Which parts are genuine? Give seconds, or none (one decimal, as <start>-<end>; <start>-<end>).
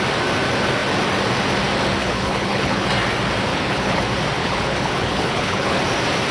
0.0-2.0; 2.9-3.5; 4.0-4.4; 5.8-6.3